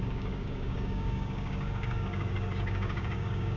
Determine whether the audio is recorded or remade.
remade